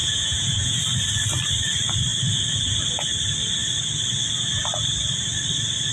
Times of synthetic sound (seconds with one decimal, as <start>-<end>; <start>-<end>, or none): 0.0-0.8